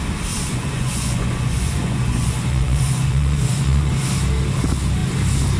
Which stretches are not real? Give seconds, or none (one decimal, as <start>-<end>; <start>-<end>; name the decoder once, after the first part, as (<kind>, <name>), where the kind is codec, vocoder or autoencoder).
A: 0.5-3.9 (vocoder, Vocos)